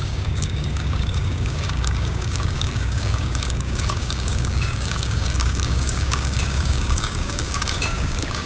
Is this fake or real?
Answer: fake